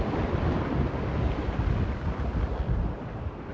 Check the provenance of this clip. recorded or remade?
recorded